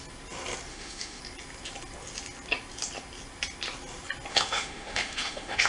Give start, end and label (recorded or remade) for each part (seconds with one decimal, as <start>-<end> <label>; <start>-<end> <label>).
0.0-0.7 recorded; 0.7-1.2 remade; 1.2-4.3 recorded; 4.3-5.7 remade